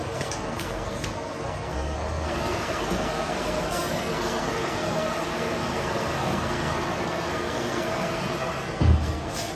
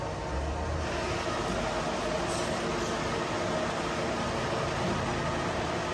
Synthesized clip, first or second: first